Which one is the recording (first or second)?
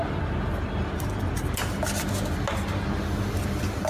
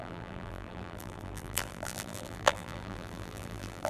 first